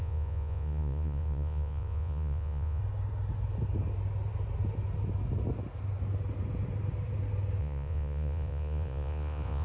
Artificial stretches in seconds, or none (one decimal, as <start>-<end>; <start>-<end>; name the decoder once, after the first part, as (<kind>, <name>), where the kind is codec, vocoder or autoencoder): 0.0-2.8 (vocoder, Vocos); 7.6-9.6